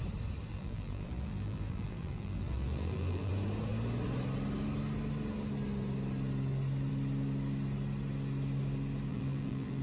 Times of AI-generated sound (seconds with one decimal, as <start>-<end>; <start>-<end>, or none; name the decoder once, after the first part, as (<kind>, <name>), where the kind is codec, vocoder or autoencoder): 0.5-3.3 (vocoder, BigVGAN v2); 9.1-9.8

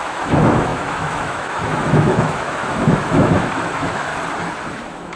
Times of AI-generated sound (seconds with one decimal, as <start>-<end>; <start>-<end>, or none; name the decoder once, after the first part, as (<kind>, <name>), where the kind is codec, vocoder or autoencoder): 0.0-4.1 (autoencoder, DAC-VAE); 4.7-5.2